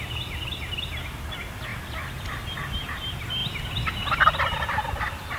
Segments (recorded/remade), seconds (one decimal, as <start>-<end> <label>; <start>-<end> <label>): 0.0-5.4 recorded